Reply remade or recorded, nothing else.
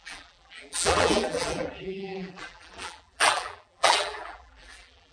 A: remade